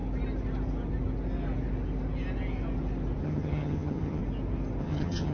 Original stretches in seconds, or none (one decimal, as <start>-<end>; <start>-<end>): 0.0-3.2; 4.2-4.8